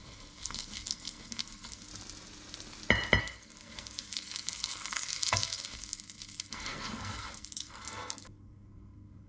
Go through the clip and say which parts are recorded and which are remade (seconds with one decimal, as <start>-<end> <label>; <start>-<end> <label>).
0.0-1.9 remade; 1.9-3.2 recorded; 3.2-9.3 remade